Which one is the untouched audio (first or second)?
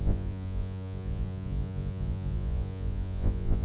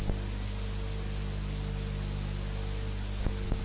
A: second